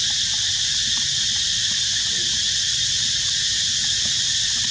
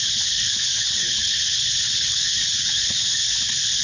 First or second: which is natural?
first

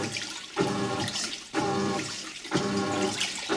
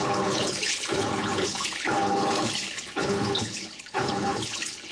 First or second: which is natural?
first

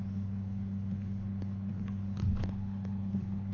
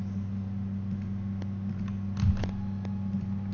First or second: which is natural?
second